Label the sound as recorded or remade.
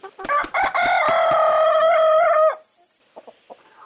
recorded